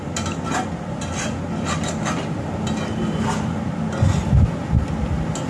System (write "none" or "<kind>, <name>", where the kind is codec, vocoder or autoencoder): none